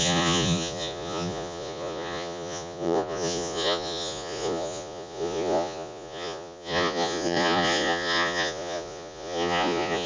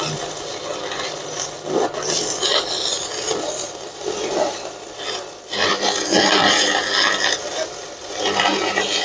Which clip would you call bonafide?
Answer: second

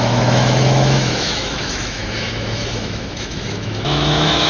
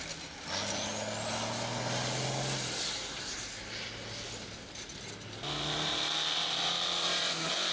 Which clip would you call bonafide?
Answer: second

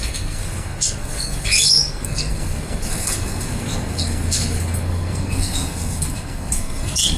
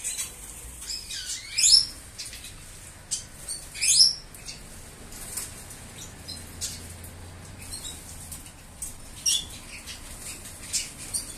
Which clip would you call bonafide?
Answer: second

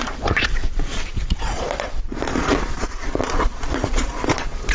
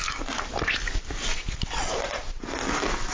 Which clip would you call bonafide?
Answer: second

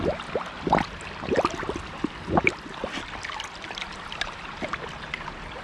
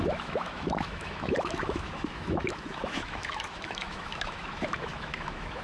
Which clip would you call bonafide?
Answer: first